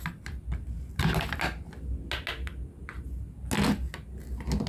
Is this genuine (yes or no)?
yes